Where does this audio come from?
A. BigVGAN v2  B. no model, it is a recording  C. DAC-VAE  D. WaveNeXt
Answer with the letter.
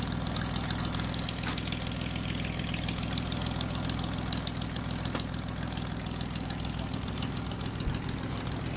B